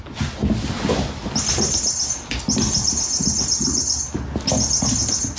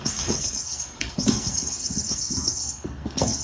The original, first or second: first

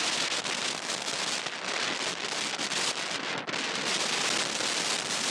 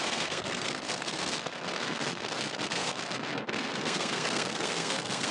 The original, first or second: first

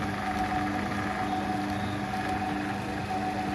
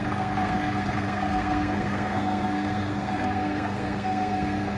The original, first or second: first